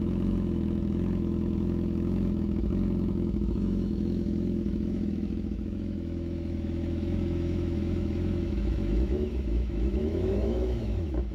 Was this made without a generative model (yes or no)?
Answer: no